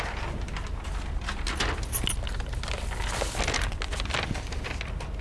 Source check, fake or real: real